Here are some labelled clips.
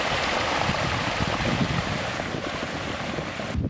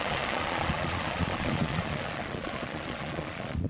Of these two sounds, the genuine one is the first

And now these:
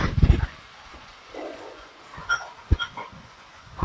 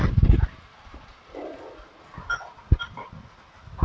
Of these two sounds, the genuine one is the second